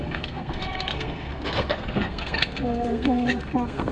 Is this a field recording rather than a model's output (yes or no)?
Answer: no